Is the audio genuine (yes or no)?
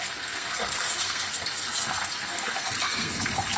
no